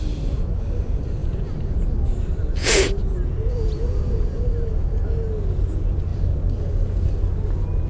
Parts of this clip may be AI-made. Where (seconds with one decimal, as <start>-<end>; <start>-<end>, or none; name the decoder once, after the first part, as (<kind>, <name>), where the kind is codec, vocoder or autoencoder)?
1.2-2.2 (vocoder, Vocos); 2.6-4.7